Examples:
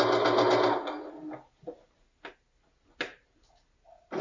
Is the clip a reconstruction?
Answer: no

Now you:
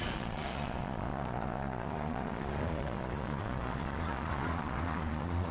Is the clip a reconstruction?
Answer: yes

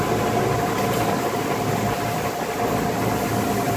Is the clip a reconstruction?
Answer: no